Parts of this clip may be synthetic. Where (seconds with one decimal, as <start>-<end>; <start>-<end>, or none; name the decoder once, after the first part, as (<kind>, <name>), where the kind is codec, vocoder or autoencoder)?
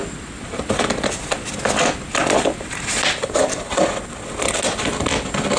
none